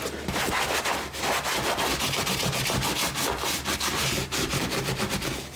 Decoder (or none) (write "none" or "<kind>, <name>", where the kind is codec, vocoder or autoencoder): none